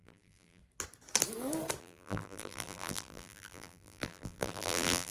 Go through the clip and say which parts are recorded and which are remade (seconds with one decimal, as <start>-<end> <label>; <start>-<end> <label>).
0.0-0.6 remade; 0.6-1.8 recorded; 1.8-5.1 remade